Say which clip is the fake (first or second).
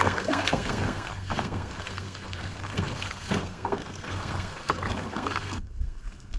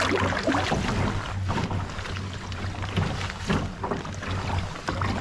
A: first